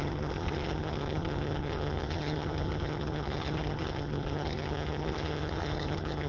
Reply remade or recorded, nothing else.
remade